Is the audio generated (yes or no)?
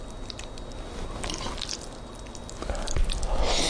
no